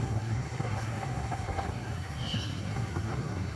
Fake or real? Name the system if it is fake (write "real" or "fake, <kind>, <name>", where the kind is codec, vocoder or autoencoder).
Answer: fake, codec, SNAC